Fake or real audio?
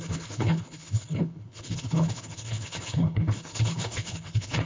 fake